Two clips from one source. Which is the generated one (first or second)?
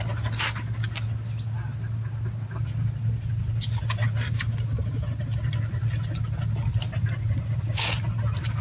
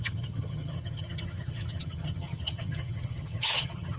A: second